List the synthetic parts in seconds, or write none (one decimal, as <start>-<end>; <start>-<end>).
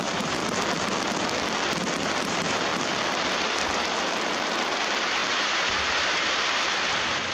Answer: 0.0-0.4; 2.1-2.7; 3.3-7.3